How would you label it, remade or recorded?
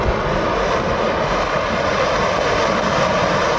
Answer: recorded